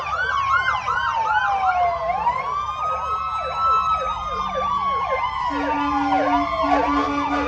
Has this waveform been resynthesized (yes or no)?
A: no